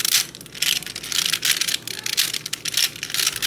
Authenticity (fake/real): real